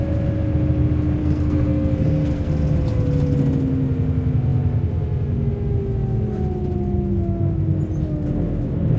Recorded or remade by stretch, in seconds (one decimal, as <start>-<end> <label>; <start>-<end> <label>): 0.0-1.2 recorded; 1.2-2.5 remade; 2.5-9.0 recorded

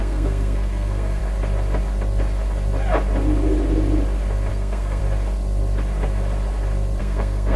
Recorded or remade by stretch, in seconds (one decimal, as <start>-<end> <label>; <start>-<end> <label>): 0.0-1.2 remade; 1.2-4.5 recorded; 4.5-5.0 remade; 5.0-7.0 recorded; 7.0-7.6 remade

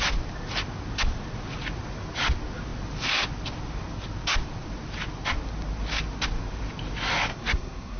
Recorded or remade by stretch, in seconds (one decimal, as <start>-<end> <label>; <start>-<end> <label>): 0.0-7.3 recorded; 7.3-8.0 remade

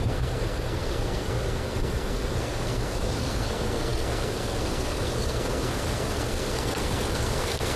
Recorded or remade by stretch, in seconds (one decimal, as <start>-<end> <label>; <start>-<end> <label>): 0.0-7.8 remade

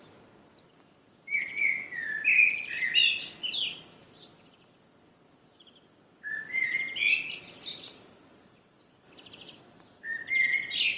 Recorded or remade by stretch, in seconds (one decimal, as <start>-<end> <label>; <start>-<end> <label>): 0.0-11.0 recorded